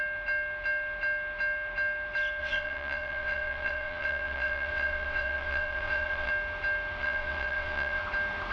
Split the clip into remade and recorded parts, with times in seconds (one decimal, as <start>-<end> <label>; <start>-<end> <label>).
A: 0.0-2.4 recorded; 2.4-6.3 remade; 6.3-7.0 recorded; 7.0-8.0 remade; 8.0-8.5 recorded